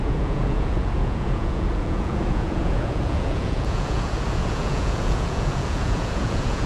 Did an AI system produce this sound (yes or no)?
yes